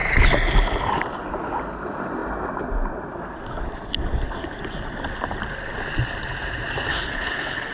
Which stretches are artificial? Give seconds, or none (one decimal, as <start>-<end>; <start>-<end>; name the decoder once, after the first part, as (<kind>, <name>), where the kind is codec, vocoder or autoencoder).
6.9-7.7 (codec, HILCodec)

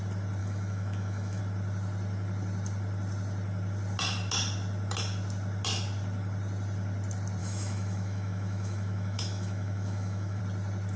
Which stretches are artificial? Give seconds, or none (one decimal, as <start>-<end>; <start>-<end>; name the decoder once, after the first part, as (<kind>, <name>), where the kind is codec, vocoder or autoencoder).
0.4-1.4 (autoencoder, DAC-VAE); 7.4-10.4

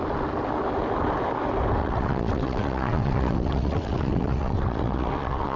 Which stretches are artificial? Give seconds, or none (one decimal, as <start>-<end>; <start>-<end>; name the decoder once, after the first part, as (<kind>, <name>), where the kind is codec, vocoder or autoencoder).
1.8-5.6 (vocoder, WaveNeXt)

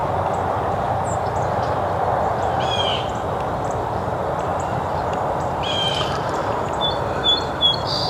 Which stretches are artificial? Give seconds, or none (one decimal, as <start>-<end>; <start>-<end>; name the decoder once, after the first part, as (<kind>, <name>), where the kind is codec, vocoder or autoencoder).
4.5-8.1 (vocoder, BigVGAN v2)

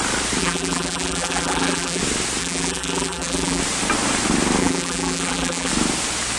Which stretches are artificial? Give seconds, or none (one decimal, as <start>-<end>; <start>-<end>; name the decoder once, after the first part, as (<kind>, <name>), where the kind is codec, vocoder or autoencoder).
0.4-2.0 (vocoder, BigVGAN v2); 2.4-3.6; 4.6-5.7

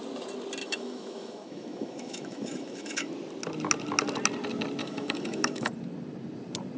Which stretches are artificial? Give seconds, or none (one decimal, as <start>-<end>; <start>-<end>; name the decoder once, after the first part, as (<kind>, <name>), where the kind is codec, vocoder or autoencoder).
0.6-3.1 (autoencoder, DAC-VAE); 4.8-5.7

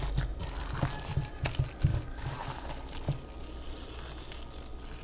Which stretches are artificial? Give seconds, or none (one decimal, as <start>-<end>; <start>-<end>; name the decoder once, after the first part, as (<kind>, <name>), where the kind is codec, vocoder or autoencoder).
1.9-2.7 (codec, DAC)